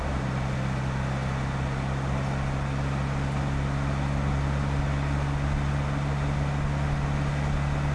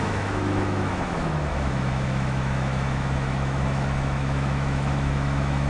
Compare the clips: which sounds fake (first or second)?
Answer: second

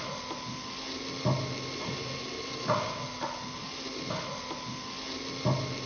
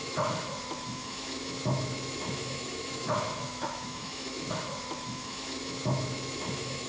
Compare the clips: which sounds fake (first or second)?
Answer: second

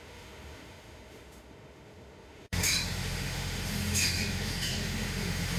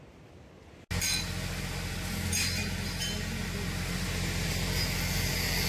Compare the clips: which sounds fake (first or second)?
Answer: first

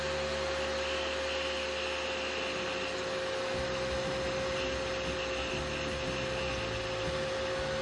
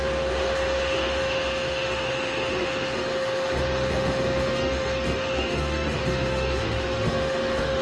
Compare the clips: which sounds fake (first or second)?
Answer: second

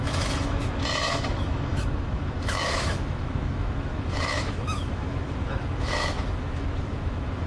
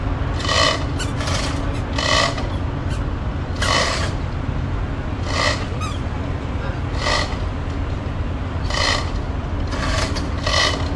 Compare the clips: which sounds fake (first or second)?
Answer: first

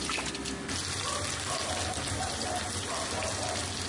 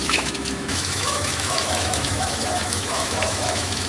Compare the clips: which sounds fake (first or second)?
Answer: second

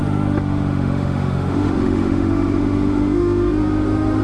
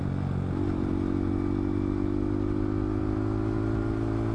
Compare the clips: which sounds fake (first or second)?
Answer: first